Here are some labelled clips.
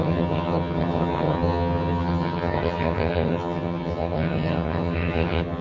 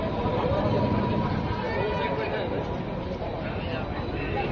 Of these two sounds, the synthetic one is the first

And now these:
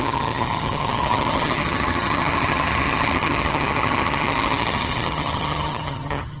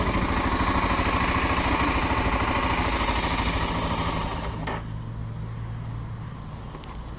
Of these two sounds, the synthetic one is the first